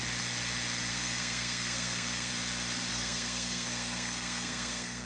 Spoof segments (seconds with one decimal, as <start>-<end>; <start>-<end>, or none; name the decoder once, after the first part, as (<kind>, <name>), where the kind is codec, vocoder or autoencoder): 0.9-2.3 (codec, SNAC); 2.9-5.1